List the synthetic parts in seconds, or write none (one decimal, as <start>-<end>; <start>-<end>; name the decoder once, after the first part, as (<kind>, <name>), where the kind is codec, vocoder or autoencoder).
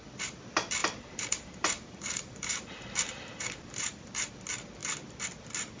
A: 0.8-4.3 (vocoder, BigVGAN v2)